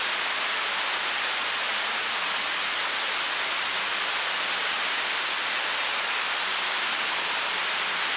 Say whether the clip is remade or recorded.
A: recorded